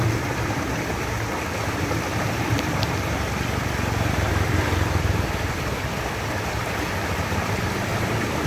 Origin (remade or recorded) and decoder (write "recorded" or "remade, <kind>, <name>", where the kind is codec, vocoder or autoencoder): remade, vocoder, BigVGAN v2